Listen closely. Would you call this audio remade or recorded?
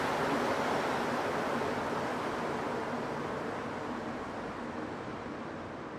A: remade